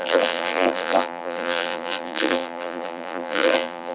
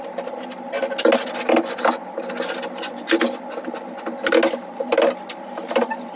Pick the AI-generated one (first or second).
first